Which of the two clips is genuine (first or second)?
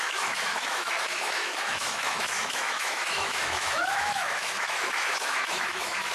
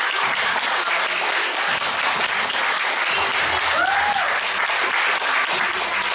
second